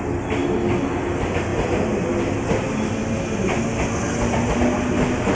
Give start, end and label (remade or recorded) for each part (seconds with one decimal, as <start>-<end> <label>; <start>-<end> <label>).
0.0-1.5 recorded; 1.5-2.2 remade; 2.2-5.3 recorded